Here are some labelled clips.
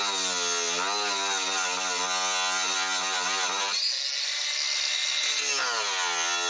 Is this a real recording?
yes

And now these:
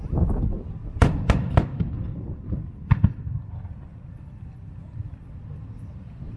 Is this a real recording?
yes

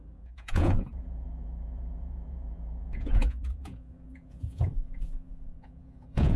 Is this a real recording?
no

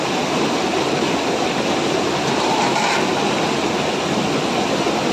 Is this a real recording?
yes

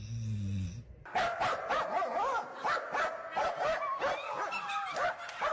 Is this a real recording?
yes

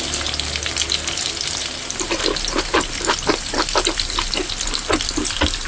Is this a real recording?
yes